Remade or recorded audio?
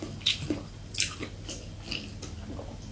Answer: recorded